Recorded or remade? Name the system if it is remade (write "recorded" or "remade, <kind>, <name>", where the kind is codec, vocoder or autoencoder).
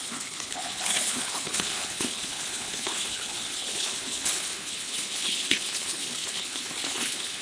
remade, codec, HILCodec